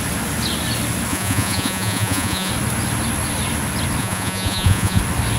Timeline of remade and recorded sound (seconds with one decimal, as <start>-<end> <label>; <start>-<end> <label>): 0.0-1.1 recorded; 1.1-2.5 remade; 2.5-4.0 recorded; 4.0-5.0 remade; 5.0-5.4 recorded